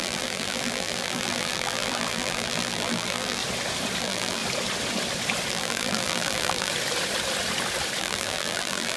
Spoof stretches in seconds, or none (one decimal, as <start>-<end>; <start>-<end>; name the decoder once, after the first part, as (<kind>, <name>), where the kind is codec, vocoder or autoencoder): 0.0-3.4 (vocoder, BigVGAN v2); 4.0-4.4; 5.5-6.7; 8.0-9.0